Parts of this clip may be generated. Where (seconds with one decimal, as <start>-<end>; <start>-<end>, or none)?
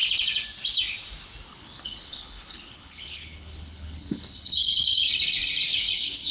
1.5-5.1; 5.7-6.3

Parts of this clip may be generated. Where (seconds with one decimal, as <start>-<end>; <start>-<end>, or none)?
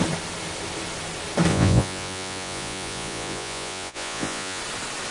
1.5-4.6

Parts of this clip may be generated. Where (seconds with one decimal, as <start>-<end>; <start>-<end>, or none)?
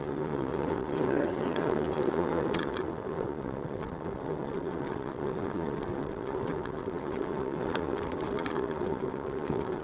0.0-9.8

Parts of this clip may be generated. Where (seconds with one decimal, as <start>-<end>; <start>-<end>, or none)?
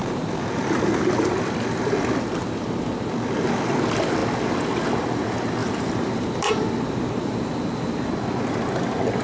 0.0-1.3; 5.6-8.1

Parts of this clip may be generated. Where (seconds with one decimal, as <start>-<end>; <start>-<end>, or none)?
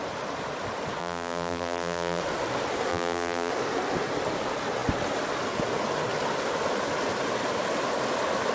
1.0-2.2; 2.9-3.5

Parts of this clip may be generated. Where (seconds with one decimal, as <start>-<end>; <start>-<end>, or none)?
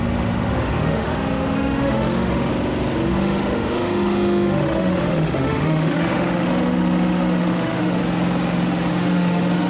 0.0-2.5; 3.1-8.0; 8.9-9.7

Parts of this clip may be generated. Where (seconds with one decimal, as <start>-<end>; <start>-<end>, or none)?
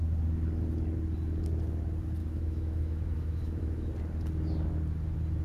2.2-3.9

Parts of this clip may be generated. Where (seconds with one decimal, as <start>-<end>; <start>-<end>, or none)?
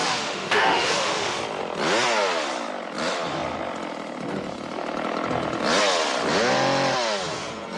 0.0-1.4